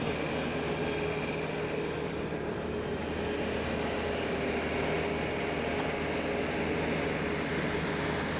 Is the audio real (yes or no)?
yes